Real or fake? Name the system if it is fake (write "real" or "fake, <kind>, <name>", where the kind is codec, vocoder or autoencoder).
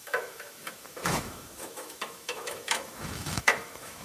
fake, autoencoder, DAC-VAE